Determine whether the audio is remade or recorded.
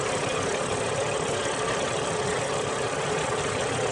recorded